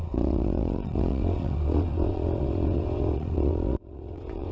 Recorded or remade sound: remade